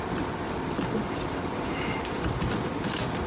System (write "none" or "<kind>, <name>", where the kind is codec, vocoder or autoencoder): vocoder, BigVGAN v2